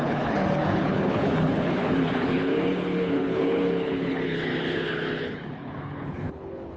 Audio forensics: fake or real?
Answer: fake